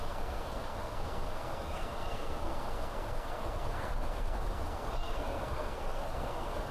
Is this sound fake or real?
fake